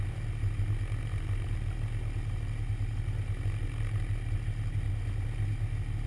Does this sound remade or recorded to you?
recorded